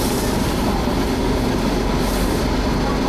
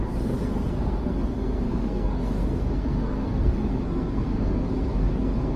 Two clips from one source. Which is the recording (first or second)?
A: first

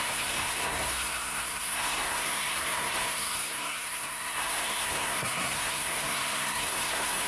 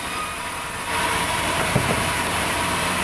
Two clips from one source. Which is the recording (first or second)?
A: second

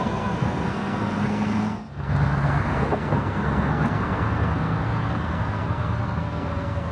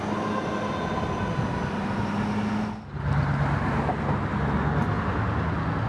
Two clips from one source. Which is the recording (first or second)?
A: second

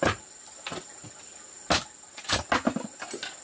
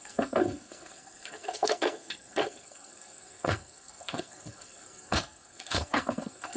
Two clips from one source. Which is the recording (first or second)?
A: first